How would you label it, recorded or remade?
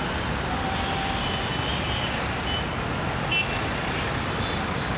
recorded